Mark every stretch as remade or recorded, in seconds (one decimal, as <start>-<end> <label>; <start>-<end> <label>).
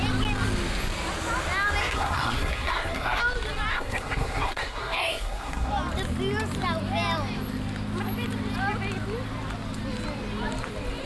0.0-1.8 recorded; 1.8-3.2 remade; 3.2-3.7 recorded; 3.7-5.7 remade; 5.7-11.1 recorded